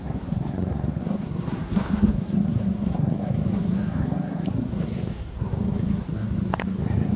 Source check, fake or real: fake